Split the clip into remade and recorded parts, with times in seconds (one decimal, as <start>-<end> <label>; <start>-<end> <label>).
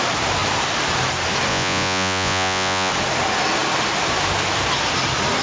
0.0-1.5 recorded; 1.5-2.9 remade; 2.9-5.4 recorded